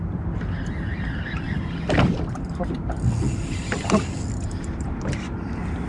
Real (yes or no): yes